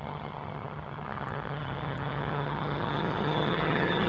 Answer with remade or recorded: remade